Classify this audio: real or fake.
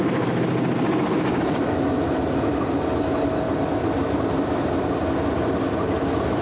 real